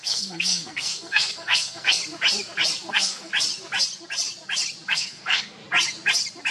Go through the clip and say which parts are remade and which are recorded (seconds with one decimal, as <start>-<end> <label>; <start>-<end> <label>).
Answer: 0.0-2.0 remade; 2.0-2.9 recorded; 2.9-3.3 remade; 3.3-4.9 recorded; 4.9-5.6 remade; 5.6-6.5 recorded